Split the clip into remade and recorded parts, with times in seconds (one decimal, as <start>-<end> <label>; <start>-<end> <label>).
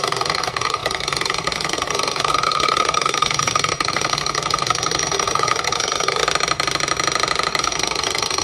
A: 0.0-6.2 remade; 6.2-7.6 recorded; 7.6-8.4 remade